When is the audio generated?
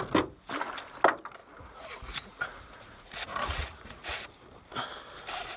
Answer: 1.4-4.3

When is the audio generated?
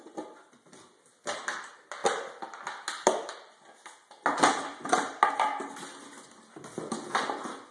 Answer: none